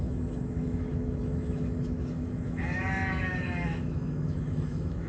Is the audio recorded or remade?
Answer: remade